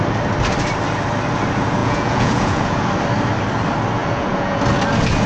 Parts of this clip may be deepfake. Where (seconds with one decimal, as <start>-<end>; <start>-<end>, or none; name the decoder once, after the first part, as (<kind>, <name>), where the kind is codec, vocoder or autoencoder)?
1.8-2.9 (vocoder, Vocos); 4.0-4.6